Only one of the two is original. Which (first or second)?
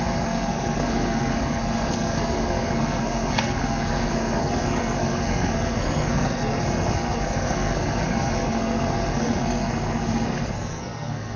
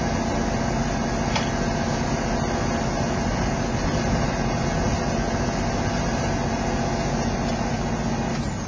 second